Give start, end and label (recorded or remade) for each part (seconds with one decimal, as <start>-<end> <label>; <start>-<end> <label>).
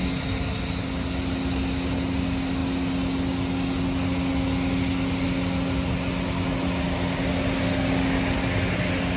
0.0-9.2 recorded